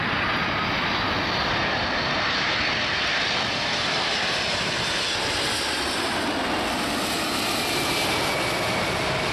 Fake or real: real